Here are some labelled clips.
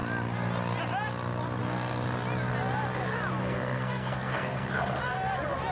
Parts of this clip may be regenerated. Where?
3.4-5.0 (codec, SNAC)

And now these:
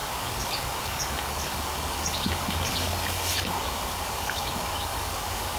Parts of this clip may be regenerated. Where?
0.0-5.6 (codec, DAC)

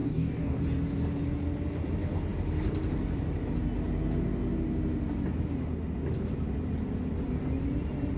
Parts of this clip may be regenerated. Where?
0.0-0.6 (codec, DAC)

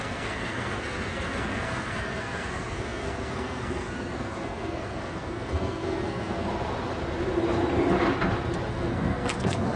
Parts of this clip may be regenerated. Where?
0.0-6.5 (codec, SNAC); 8.7-9.8

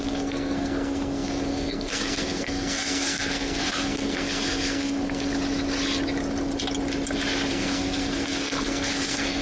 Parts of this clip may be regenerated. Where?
0.0-5.3 (codec, SNAC); 7.5-9.4

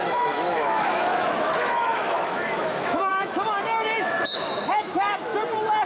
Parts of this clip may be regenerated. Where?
0.0-5.3 (autoencoder, DAC-VAE)

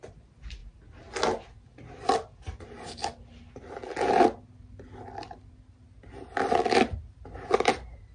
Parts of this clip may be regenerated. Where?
none